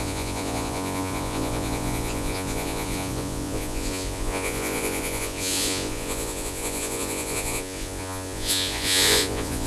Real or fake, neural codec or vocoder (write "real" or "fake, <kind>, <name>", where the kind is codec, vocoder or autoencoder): fake, vocoder, Vocos